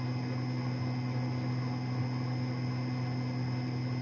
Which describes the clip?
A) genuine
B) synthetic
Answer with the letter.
A